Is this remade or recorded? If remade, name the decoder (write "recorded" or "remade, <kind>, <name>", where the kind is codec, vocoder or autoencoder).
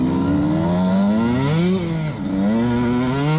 recorded